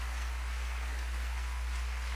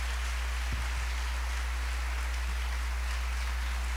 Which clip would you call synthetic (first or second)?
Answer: first